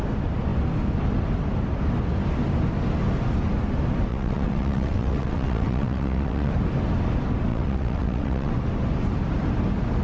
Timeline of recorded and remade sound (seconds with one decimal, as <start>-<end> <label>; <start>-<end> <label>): 0.0-4.1 recorded; 4.1-6.5 remade; 6.5-7.5 recorded; 7.5-8.5 remade; 8.5-10.0 recorded

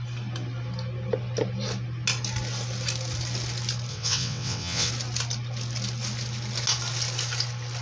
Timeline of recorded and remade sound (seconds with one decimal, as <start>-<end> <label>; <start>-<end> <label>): 0.0-3.9 recorded; 3.9-4.9 remade; 4.9-7.8 recorded